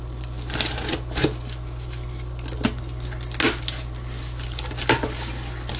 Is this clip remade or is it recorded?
recorded